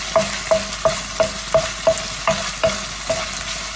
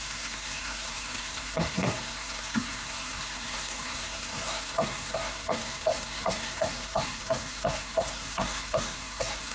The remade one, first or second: second